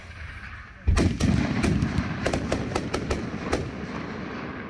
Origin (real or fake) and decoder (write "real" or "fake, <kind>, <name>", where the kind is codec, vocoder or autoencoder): real